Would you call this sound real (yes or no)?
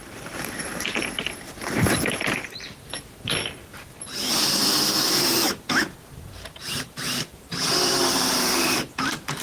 no